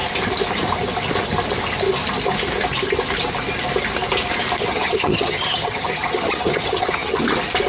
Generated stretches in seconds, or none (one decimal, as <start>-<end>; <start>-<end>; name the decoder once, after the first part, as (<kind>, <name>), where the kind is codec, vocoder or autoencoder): 4.7-7.2 (vocoder, HiFi-GAN)